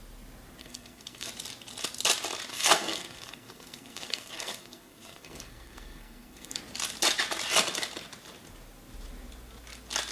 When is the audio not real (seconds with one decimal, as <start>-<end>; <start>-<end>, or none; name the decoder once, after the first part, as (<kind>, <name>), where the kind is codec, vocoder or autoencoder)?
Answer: 0.6-1.3 (codec, SNAC); 2.5-6.6